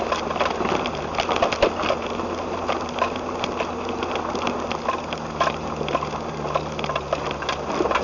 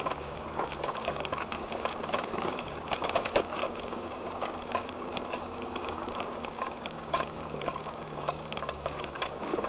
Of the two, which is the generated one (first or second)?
second